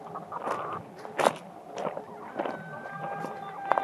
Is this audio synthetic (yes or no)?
no